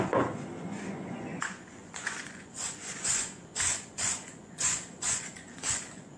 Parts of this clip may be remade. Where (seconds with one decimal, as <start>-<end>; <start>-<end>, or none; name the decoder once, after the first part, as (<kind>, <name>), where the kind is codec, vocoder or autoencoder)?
0.0-6.2 (vocoder, Vocos)